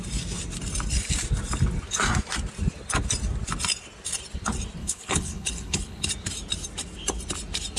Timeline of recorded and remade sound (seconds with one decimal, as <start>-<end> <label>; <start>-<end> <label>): 0.0-4.8 recorded; 4.8-6.1 remade; 6.1-7.8 recorded